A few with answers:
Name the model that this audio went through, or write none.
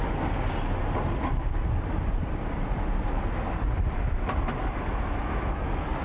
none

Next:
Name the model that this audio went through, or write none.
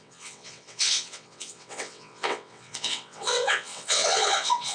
vocoder, WaveNeXt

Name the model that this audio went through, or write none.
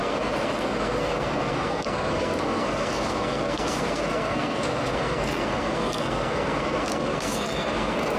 codec, SNAC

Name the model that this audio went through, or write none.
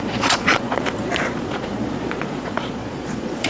vocoder, Vocos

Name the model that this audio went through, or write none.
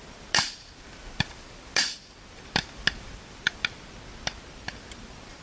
none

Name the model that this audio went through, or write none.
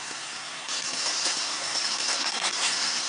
codec, SNAC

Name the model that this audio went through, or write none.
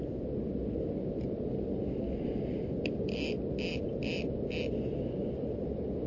none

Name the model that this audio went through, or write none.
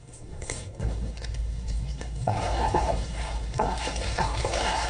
codec, SNAC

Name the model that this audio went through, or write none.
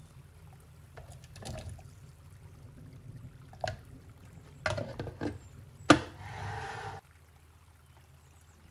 none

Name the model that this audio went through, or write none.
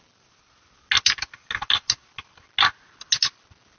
none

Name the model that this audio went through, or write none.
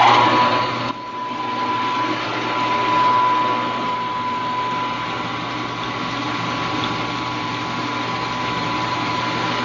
none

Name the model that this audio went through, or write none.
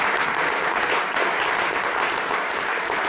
vocoder, BigVGAN v2